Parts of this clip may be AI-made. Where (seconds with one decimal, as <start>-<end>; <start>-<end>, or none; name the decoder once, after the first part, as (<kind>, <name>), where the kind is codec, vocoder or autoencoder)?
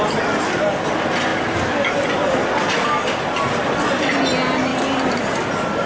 1.3-4.2 (vocoder, BigVGAN v2); 4.7-5.4